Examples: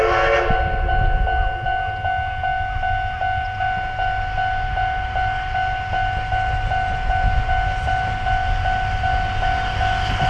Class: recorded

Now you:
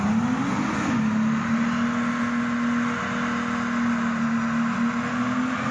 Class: recorded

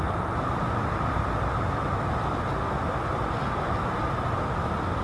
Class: recorded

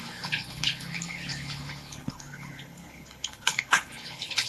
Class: remade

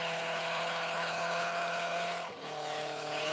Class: remade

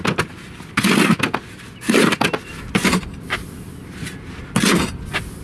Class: recorded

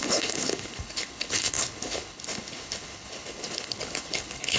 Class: remade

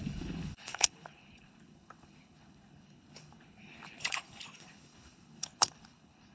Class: remade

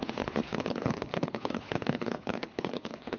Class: remade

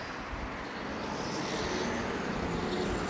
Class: recorded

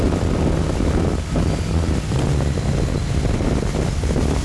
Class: recorded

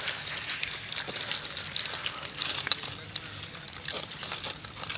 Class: recorded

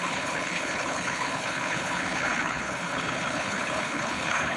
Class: remade